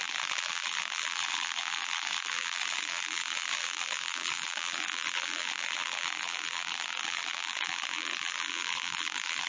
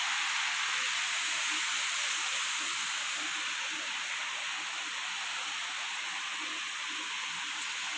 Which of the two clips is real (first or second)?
second